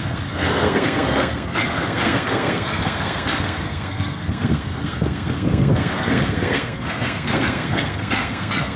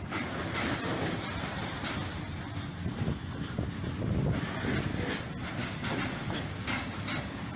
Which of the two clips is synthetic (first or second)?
first